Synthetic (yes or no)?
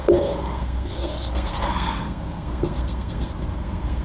yes